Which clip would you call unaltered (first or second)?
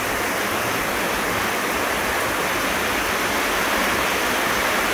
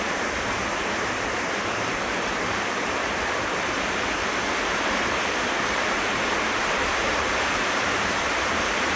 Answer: first